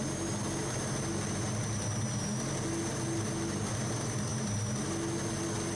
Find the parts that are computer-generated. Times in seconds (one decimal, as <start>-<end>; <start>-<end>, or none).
none